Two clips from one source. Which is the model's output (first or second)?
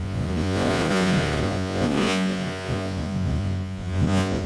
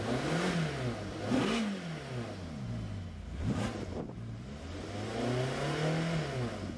first